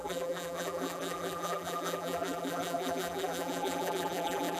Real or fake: fake